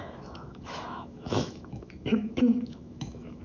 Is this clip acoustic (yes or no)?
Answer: no